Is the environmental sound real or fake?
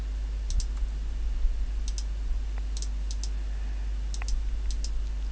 real